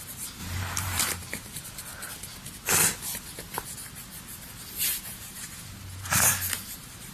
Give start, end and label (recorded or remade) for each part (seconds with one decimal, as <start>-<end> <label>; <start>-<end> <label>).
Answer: 0.0-1.9 remade; 1.9-5.2 recorded; 5.2-7.1 remade